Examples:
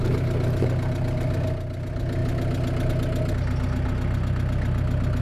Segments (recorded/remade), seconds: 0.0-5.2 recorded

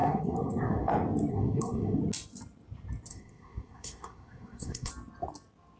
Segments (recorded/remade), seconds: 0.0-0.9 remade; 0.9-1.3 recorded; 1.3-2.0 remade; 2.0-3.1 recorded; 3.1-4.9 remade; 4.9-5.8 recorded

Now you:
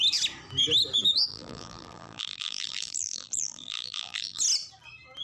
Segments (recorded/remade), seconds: 0.0-1.3 recorded; 1.3-4.4 remade; 4.4-5.2 recorded